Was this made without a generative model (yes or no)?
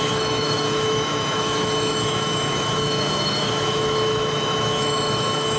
no